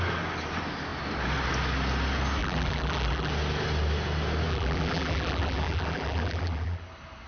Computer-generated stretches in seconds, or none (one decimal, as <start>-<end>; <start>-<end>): 2.4-3.3; 4.5-6.8